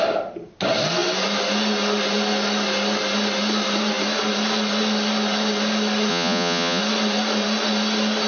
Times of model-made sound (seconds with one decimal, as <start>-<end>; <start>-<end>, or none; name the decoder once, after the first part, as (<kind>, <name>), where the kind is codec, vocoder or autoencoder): 6.1-6.8 (vocoder, Vocos)